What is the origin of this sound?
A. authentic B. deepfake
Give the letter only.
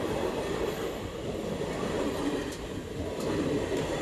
A